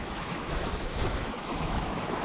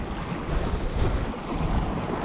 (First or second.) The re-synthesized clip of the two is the first